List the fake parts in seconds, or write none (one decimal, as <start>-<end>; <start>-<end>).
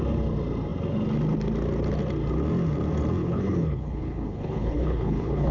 3.2-5.5